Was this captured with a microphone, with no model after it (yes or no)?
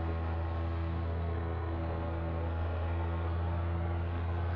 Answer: no